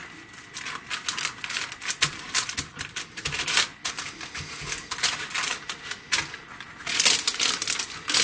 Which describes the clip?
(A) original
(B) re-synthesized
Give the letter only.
A